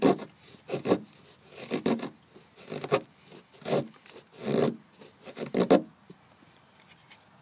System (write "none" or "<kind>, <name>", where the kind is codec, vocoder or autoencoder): none